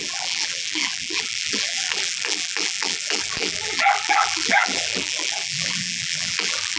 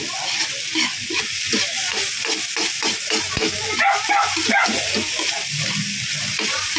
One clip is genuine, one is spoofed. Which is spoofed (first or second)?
first